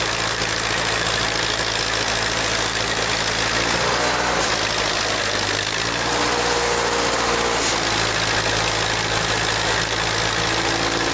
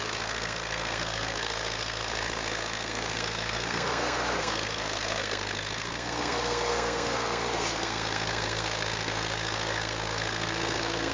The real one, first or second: first